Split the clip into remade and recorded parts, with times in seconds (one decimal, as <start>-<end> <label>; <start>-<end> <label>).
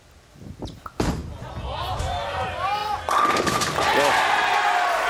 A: 0.0-5.1 recorded